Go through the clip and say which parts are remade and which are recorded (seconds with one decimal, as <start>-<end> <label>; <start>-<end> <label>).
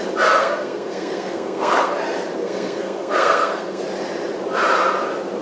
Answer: 0.0-0.4 recorded; 0.4-1.9 remade; 1.9-2.4 recorded; 2.4-3.8 remade; 3.8-5.4 recorded